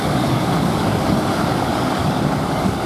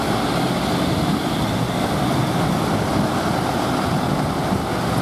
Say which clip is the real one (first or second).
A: second